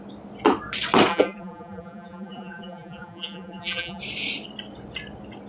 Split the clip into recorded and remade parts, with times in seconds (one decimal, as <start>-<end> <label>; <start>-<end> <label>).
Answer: 0.0-1.1 recorded; 1.1-4.0 remade; 4.0-5.5 recorded